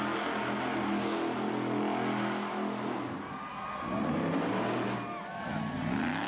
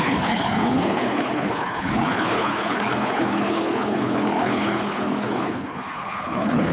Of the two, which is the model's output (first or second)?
second